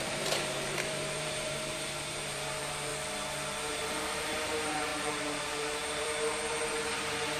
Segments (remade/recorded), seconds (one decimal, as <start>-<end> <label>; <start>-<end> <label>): 0.0-2.9 remade; 2.9-3.7 recorded; 3.7-7.4 remade